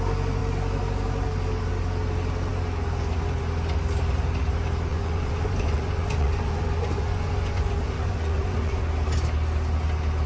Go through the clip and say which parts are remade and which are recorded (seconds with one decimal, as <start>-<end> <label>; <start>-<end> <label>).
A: 0.0-4.9 recorded; 4.9-8.8 remade; 8.8-10.3 recorded